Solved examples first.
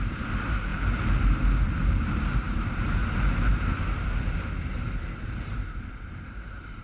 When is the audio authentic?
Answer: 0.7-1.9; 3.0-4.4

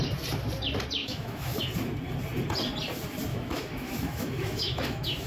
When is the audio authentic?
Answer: 0.0-1.0; 1.6-3.3

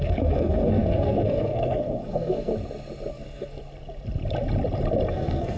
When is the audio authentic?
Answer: 2.5-3.1; 3.6-5.1

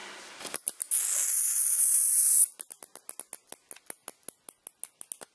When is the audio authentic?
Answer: 0.0-5.3

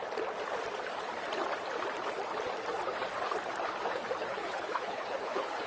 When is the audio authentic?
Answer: 0.0-4.2

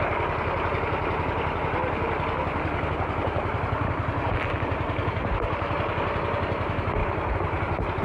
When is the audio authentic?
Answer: 0.0-8.0